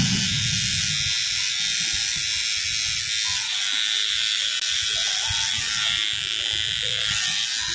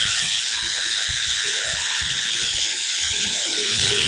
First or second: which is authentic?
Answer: first